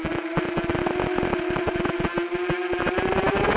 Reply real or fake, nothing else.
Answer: real